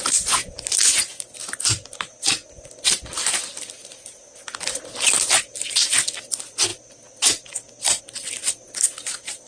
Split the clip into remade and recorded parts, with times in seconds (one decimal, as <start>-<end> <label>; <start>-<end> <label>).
0.0-9.5 recorded

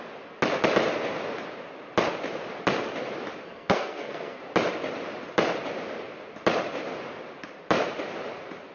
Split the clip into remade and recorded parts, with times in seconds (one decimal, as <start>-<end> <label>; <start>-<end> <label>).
0.0-3.4 recorded; 3.4-4.4 remade; 4.4-8.7 recorded

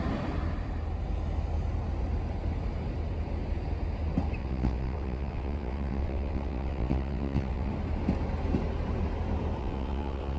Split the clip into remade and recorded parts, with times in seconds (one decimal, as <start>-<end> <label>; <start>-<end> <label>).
0.0-4.4 recorded; 4.4-7.7 remade; 7.7-9.6 recorded; 9.6-10.4 remade

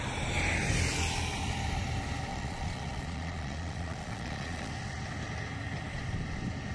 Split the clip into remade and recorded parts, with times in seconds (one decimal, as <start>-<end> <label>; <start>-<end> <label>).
0.0-2.3 recorded; 2.3-4.7 remade; 4.7-6.7 recorded

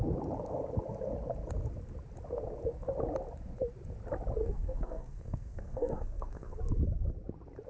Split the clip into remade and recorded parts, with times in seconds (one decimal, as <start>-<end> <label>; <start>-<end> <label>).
0.0-4.4 recorded; 4.4-6.6 remade; 6.6-7.7 recorded

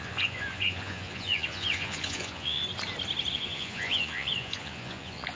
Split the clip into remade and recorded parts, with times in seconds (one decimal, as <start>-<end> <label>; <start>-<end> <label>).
0.0-2.6 remade; 2.6-3.3 recorded; 3.3-5.4 remade

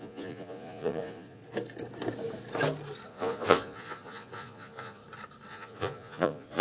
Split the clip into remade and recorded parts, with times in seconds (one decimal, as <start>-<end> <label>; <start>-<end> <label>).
0.0-1.4 remade; 1.4-3.1 recorded; 3.1-5.0 remade; 5.0-5.5 recorded; 5.5-6.6 remade